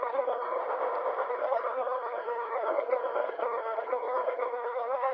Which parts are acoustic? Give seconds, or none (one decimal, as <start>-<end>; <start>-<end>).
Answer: 0.6-1.3